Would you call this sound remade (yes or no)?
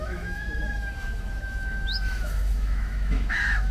yes